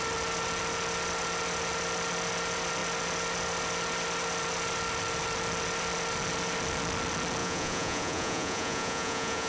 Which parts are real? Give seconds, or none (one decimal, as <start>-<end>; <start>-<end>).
0.0-7.4